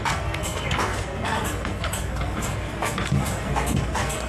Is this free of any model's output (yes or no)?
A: no